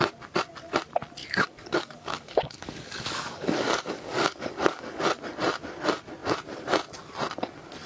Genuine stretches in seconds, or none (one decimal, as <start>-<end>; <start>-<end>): 0.0-1.2; 5.0-7.9